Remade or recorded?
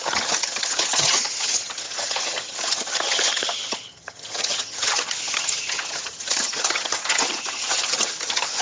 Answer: remade